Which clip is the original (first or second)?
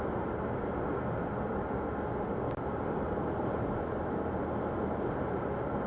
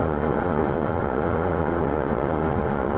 first